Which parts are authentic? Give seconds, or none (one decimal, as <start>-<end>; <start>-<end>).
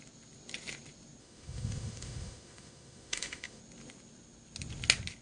0.0-1.2; 3.6-5.2